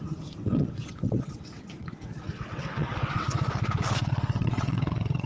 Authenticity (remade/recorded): remade